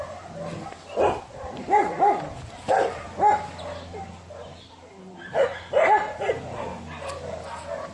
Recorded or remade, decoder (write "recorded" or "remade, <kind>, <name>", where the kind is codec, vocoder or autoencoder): recorded